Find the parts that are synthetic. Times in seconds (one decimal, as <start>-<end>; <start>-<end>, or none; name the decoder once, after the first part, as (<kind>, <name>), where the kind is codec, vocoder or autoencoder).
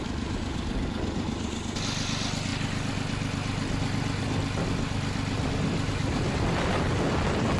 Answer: none